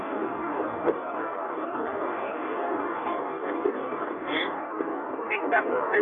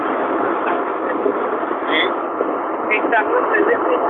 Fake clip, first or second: first